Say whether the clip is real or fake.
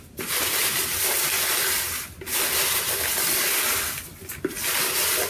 real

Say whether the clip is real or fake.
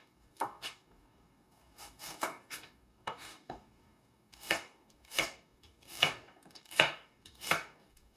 fake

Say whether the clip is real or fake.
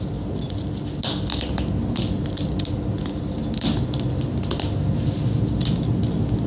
real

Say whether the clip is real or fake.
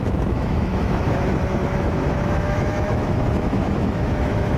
fake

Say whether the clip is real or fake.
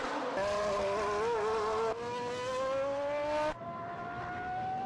real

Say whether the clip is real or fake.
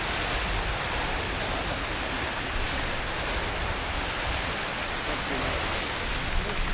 real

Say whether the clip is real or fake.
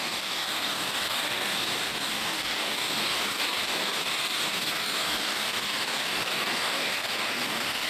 fake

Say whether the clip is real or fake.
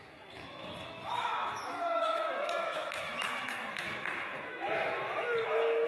fake